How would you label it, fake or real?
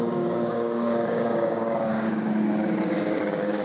fake